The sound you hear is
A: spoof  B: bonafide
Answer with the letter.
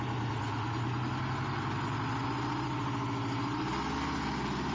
B